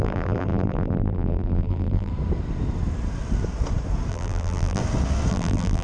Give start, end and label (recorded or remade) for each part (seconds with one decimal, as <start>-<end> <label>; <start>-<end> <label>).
0.0-2.1 remade; 2.1-4.1 recorded; 4.1-4.8 remade; 4.8-5.3 recorded; 5.3-5.8 remade